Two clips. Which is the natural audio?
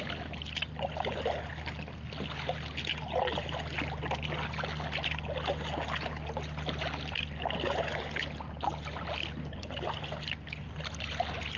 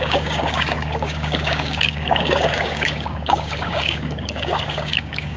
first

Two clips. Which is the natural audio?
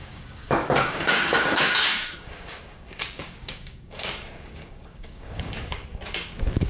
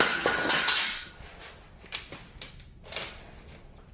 second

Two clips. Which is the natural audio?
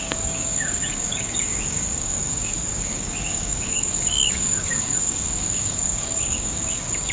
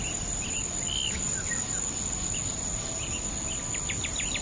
second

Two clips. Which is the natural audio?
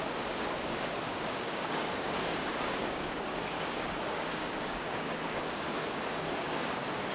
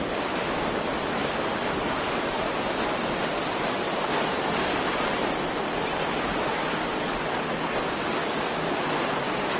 second